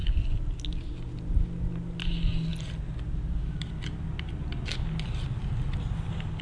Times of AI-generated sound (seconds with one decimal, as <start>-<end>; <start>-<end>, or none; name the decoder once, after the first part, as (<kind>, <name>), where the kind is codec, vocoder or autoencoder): none